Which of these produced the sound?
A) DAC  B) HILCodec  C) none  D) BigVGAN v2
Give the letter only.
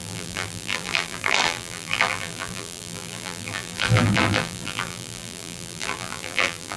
D